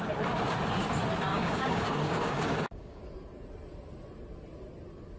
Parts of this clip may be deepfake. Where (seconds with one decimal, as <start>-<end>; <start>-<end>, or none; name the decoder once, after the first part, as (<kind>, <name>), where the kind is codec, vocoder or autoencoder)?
1.3-3.0 (codec, DAC)